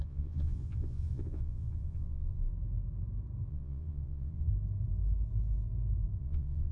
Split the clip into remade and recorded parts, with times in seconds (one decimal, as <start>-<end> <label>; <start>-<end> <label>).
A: 0.0-2.5 remade; 2.5-3.5 recorded; 3.5-4.5 remade; 4.5-6.2 recorded; 6.2-6.7 remade